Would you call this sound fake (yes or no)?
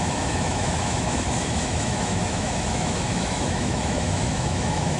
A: yes